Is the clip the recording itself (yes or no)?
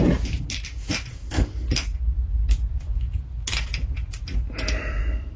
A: yes